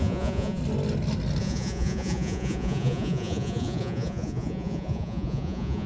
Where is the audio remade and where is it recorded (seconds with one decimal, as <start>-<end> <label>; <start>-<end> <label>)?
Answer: 0.0-0.6 remade; 0.6-1.4 recorded; 1.4-5.9 remade